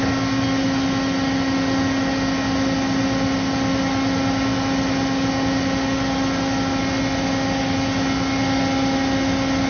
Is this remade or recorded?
recorded